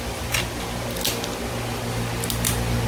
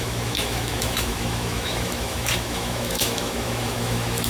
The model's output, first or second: second